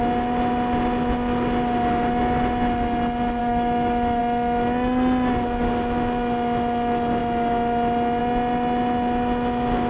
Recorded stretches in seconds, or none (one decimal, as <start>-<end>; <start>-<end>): 0.0-3.4; 4.2-9.9